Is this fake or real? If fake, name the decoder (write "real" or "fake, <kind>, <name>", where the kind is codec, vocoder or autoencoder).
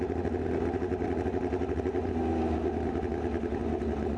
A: real